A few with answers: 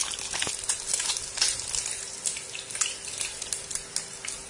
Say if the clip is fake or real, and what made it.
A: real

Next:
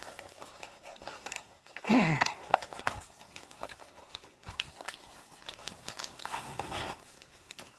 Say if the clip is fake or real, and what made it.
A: fake, codec, SNAC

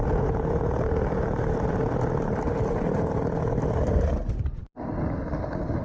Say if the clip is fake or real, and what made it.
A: real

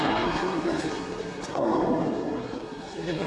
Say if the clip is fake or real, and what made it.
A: fake, codec, SNAC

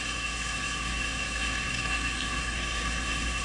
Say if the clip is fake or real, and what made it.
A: fake, codec, SNAC